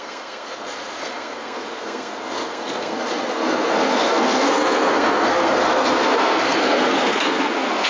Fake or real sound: fake